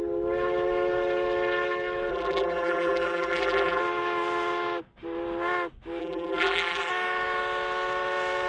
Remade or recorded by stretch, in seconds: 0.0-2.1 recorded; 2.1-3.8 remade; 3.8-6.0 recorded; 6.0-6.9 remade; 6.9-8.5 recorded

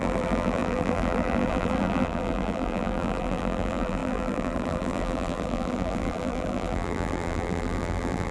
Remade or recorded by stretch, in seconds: 0.0-8.3 remade

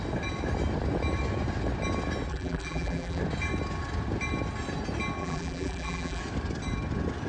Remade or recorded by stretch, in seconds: 0.0-2.3 recorded; 2.3-3.2 remade; 3.2-5.2 recorded; 5.2-6.2 remade; 6.2-7.3 recorded

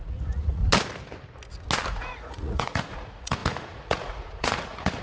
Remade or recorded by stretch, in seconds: 0.0-0.6 remade; 0.6-1.9 recorded; 1.9-5.0 remade

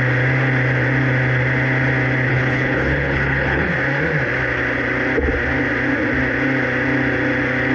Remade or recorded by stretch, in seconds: 0.0-2.3 recorded; 2.3-3.7 remade; 3.7-7.7 recorded

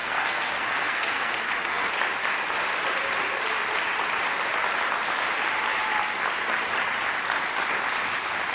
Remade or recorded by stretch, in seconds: 0.0-1.9 remade; 1.9-8.5 recorded

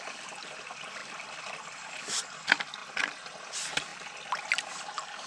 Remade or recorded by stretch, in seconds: 0.0-1.0 recorded; 1.0-1.9 remade; 1.9-2.8 recorded; 2.8-3.5 remade; 3.5-3.9 recorded; 3.9-4.6 remade; 4.6-5.3 recorded

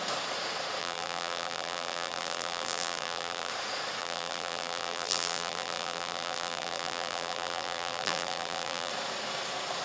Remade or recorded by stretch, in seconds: 0.0-0.8 recorded; 0.8-3.5 remade; 3.5-4.0 recorded; 4.0-8.9 remade; 8.9-9.8 recorded